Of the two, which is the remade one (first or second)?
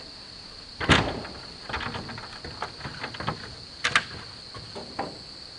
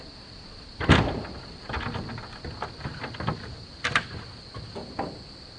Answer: second